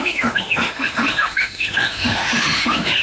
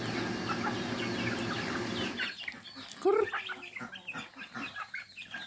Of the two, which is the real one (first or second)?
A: second